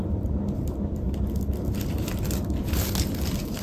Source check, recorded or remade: recorded